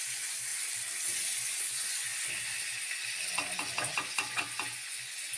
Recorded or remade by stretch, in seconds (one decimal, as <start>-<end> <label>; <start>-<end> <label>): 0.0-0.5 remade; 0.5-1.1 recorded; 1.1-2.1 remade; 2.1-3.3 recorded; 3.3-5.4 remade